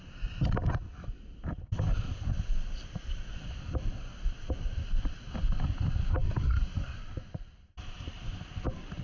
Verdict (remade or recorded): recorded